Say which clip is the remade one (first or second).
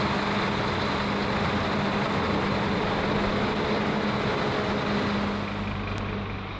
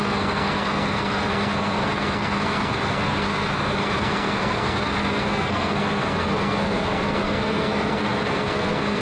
second